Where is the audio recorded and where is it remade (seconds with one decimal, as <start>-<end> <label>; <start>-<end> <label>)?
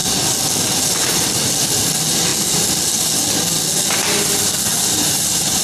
0.0-5.6 recorded